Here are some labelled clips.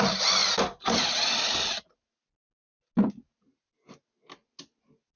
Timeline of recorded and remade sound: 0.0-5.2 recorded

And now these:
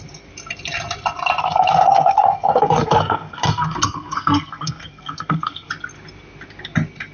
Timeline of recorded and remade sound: 0.0-1.4 recorded; 1.4-5.7 remade; 5.7-7.1 recorded

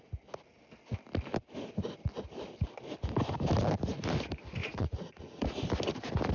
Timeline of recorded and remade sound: 0.0-4.6 recorded; 4.6-5.6 remade; 5.6-6.3 recorded

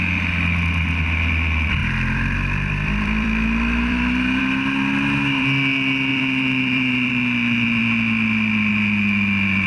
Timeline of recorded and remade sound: 0.0-1.8 recorded; 1.8-4.4 remade; 4.4-6.1 recorded; 6.1-7.1 remade; 7.1-9.7 recorded